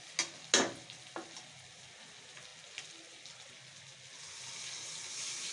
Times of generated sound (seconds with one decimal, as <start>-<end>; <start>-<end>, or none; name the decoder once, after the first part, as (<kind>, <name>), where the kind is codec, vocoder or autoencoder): none